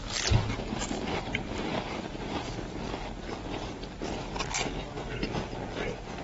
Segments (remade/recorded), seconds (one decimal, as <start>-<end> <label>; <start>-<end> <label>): 0.0-1.7 recorded; 1.7-2.6 remade; 2.6-6.2 recorded